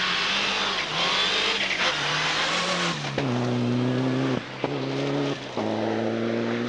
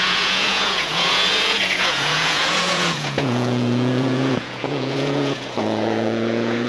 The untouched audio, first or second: first